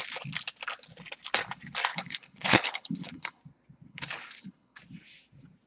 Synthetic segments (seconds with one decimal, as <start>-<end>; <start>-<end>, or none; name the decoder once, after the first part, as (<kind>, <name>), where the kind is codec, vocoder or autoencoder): 1.9-3.4 (codec, HILCodec); 3.9-4.8